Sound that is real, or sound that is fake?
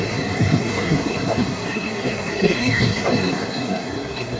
fake